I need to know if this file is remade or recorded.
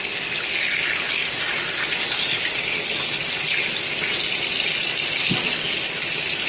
recorded